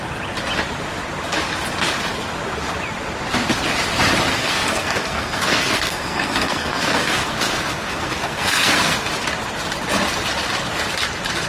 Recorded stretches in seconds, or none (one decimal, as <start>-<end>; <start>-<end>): 0.0-4.3; 9.1-11.5